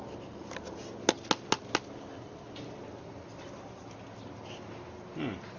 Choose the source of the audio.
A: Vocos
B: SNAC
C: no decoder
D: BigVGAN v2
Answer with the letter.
C